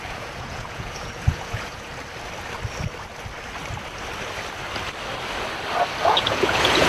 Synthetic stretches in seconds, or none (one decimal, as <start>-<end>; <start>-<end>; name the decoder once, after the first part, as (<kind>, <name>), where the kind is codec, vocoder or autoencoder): 0.0-1.9 (vocoder, Vocos); 6.0-6.9